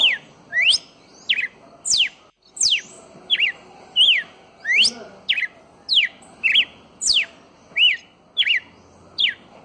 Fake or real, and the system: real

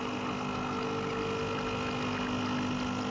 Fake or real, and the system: real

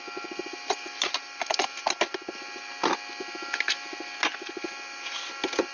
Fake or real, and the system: real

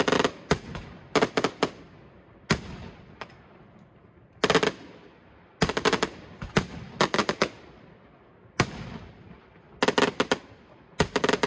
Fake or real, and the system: real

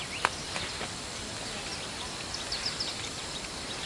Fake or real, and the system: real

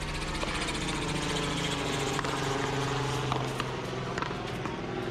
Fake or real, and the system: real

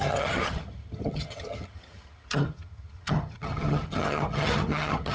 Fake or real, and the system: fake, vocoder, HiFi-GAN